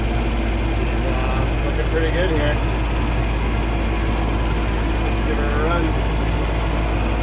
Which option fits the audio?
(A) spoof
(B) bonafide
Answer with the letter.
B